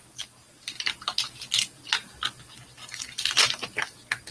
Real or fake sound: real